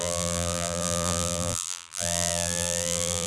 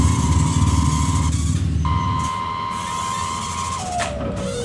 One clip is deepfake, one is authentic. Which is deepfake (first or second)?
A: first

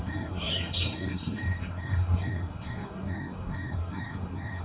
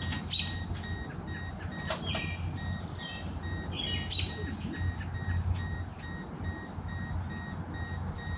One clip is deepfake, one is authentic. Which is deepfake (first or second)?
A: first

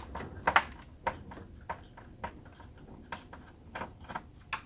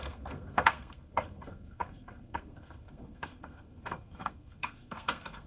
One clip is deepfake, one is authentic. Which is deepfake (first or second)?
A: second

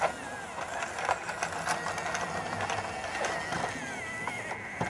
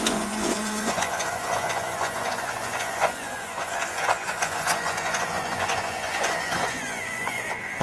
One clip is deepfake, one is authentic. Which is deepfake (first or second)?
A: second